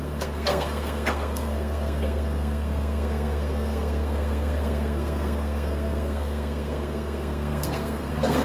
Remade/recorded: remade